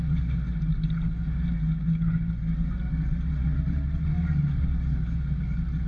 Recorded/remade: recorded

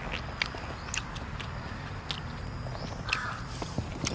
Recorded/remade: recorded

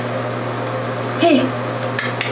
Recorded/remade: recorded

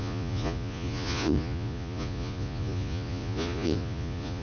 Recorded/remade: remade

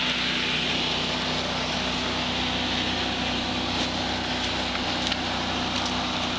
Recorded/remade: recorded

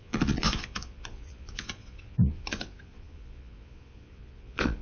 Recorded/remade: remade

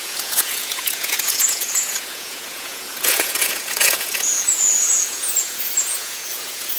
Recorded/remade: remade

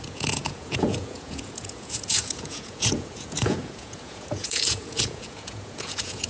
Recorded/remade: remade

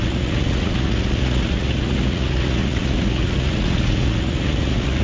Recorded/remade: remade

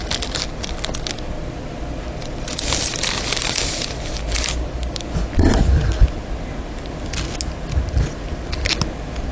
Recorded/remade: recorded